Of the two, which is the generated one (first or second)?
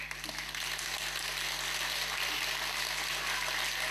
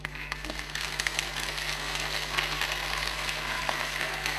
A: second